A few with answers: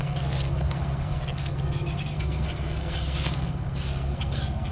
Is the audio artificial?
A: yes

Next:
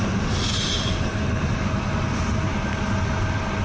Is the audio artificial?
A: no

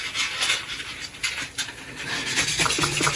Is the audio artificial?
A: no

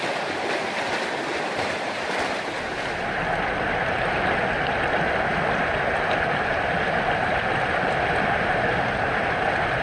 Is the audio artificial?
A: no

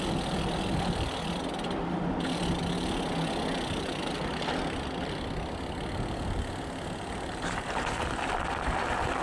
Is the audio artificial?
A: no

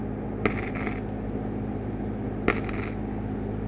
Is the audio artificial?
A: no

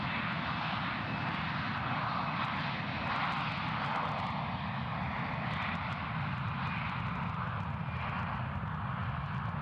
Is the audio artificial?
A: no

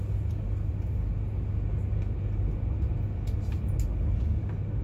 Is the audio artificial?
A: no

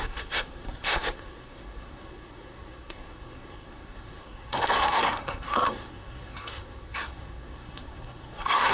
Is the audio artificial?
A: yes